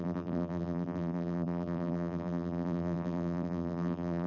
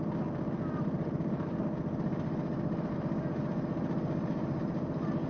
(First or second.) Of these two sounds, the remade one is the first